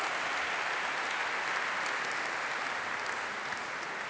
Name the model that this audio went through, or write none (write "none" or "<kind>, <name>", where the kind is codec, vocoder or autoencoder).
none